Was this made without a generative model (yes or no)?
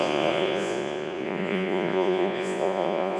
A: no